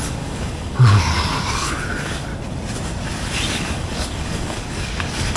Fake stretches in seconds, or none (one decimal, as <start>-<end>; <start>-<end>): 0.0-2.3; 3.5-5.4